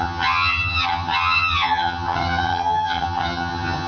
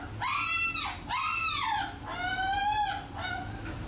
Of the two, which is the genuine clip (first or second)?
second